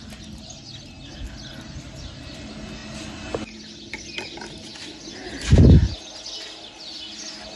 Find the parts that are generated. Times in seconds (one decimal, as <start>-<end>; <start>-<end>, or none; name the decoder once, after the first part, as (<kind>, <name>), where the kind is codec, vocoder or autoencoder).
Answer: none

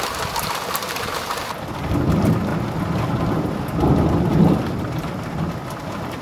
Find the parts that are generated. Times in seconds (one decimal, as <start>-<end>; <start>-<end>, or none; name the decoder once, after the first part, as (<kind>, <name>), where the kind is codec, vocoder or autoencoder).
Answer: 0.0-2.5 (vocoder, BigVGAN v2); 3.0-6.2

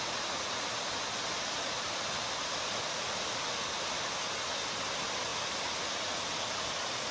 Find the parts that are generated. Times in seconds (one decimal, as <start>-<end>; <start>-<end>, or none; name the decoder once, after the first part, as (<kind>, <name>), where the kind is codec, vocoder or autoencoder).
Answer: none

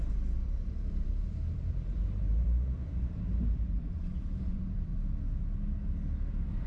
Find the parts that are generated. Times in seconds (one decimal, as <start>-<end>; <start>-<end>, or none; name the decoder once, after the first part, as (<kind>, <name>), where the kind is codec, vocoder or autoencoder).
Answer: 0.0-4.9 (vocoder, BigVGAN v2); 6.3-6.7